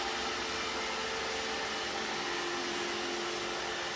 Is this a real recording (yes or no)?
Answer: yes